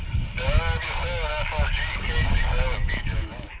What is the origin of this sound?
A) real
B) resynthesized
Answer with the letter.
B